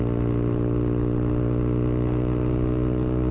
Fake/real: real